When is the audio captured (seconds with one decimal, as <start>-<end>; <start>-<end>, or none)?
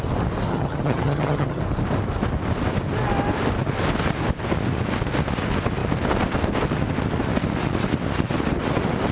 0.0-0.5; 1.6-9.1